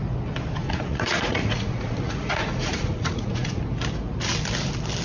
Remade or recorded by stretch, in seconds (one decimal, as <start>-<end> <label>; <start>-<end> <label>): 0.0-0.6 recorded; 0.6-3.6 remade; 3.6-5.0 recorded